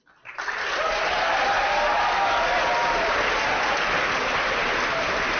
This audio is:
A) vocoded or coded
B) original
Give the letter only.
B